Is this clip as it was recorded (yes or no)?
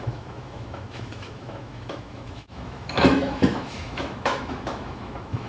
no